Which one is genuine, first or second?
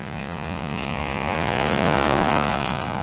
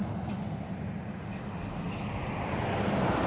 second